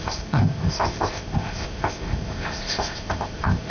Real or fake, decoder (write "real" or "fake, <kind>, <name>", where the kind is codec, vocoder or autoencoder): fake, codec, ZipCodec